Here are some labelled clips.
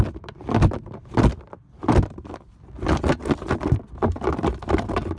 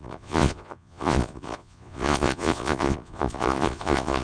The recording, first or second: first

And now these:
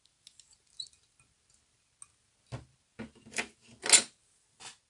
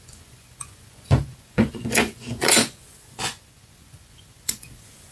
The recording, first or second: first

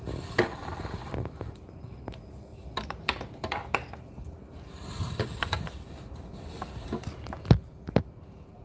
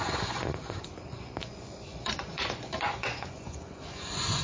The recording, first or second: first